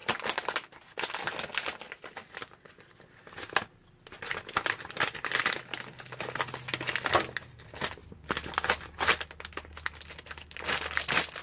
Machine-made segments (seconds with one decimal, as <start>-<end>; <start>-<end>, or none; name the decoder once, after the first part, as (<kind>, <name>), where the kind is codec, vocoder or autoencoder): none